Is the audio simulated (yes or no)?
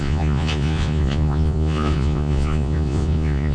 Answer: yes